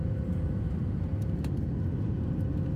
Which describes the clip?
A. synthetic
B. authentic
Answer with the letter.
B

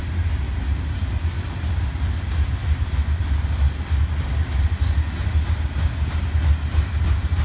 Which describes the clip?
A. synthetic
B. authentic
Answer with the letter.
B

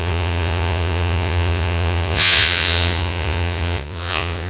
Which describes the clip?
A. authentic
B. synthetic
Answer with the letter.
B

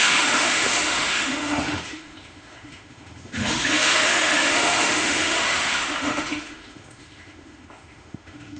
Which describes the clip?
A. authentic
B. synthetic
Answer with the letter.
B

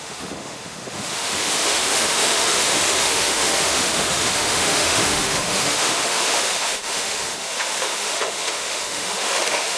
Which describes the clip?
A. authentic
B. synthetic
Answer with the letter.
B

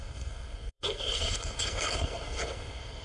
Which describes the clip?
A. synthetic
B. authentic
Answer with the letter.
A